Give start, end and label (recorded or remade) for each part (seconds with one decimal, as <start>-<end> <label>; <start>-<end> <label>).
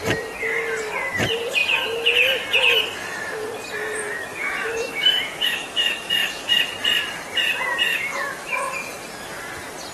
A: 0.0-4.3 recorded; 4.3-6.6 remade; 6.6-7.9 recorded; 7.9-8.7 remade; 8.7-9.9 recorded